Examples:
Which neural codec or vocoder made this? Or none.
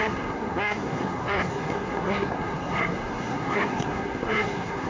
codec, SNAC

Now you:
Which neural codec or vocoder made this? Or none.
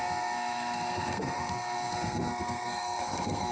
codec, SNAC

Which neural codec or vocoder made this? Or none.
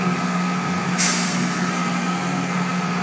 codec, SNAC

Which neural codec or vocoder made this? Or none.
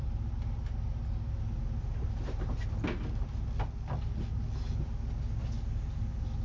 none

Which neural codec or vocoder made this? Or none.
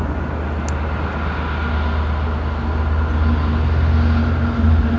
none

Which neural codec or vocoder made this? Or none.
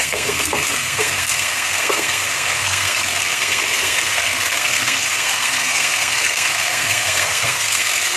codec, SNAC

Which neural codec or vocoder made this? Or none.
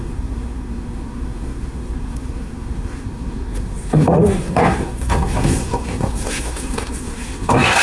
codec, SNAC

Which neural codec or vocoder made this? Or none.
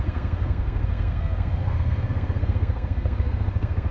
codec, SNAC